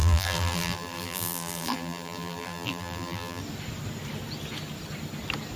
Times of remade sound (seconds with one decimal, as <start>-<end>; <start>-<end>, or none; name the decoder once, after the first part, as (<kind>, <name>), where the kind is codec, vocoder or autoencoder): 0.0-3.4 (vocoder, BigVGAN v2)